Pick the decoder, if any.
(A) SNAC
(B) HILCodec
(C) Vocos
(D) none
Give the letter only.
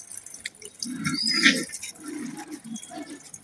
D